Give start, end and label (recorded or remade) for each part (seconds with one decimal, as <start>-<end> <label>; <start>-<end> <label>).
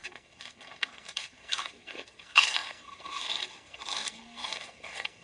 0.0-5.2 remade